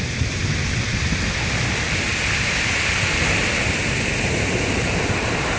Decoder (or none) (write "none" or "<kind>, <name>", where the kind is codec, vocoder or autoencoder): none